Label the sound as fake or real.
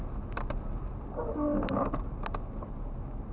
real